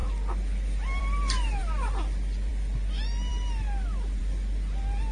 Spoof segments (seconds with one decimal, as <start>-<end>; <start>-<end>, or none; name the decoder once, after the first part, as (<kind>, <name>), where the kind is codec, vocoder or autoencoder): none